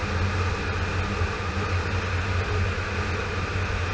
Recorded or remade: recorded